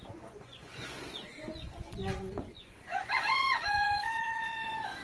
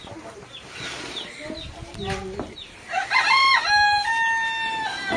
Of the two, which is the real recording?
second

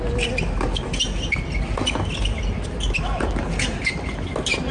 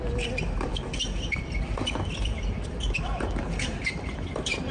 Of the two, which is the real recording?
first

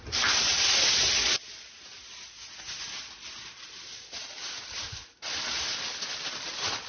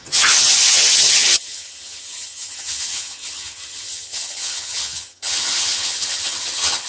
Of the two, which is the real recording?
first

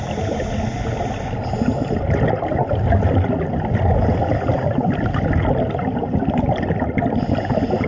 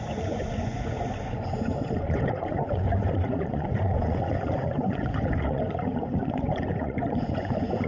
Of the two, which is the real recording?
first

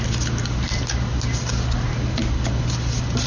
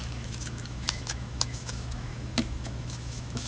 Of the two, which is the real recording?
first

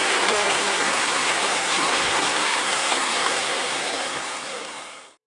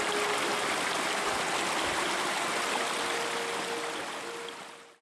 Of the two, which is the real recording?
second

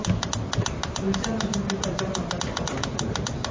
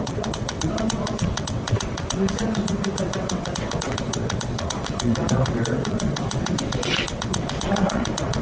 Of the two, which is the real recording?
first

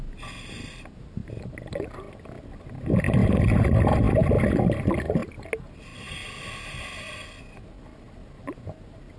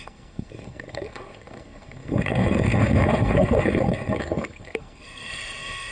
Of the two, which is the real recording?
first